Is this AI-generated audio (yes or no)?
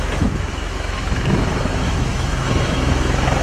yes